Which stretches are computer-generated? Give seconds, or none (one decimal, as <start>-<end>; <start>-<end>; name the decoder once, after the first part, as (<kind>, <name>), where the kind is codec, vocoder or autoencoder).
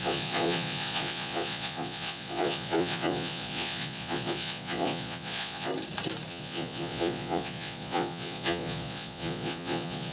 0.0-5.7 (vocoder, Vocos); 6.3-10.1